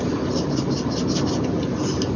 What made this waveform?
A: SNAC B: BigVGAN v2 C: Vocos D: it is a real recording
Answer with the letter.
D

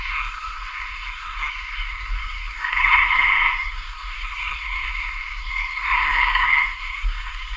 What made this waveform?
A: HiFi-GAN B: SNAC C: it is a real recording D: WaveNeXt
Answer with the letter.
B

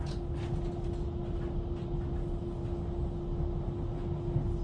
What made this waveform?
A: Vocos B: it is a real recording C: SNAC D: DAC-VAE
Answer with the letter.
B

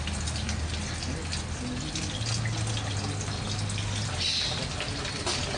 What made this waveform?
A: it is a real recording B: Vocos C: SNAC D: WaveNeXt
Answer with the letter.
A